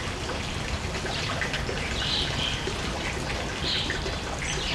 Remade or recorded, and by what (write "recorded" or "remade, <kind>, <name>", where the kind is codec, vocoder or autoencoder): recorded